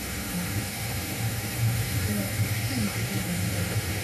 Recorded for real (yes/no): no